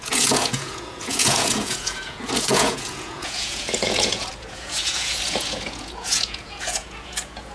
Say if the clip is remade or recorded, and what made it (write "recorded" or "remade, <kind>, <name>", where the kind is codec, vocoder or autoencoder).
remade, vocoder, Vocos